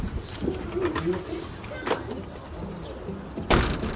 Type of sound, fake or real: real